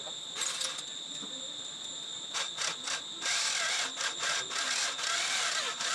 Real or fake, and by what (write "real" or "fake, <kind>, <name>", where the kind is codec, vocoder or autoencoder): real